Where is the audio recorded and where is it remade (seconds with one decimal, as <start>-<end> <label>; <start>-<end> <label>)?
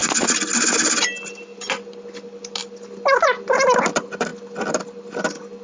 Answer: 0.0-5.6 recorded